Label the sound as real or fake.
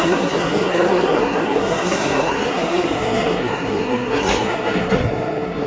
fake